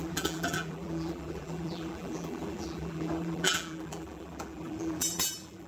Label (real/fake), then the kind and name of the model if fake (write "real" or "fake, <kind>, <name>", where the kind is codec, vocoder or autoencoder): fake, vocoder, BigVGAN v2